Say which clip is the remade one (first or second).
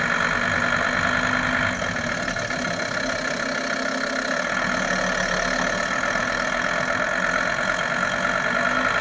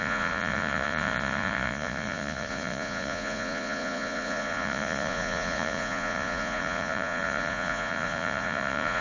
second